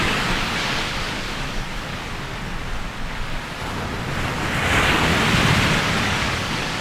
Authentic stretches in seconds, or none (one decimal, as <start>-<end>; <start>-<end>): 1.9-4.5; 5.1-5.8